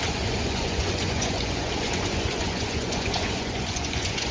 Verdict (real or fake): fake